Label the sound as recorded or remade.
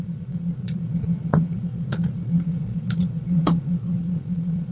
remade